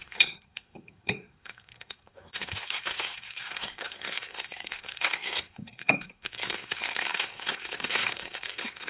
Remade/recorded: remade